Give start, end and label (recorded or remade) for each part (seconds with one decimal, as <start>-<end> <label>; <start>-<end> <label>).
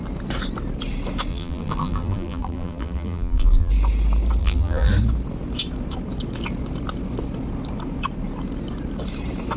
0.0-1.3 recorded; 1.3-3.7 remade; 3.7-4.4 recorded; 4.4-4.9 remade; 4.9-9.6 recorded